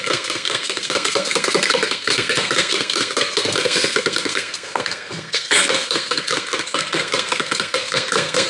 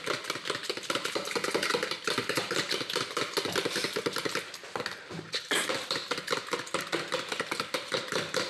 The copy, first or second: first